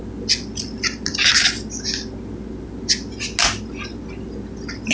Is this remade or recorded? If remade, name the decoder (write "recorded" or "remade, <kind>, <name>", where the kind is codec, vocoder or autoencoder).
recorded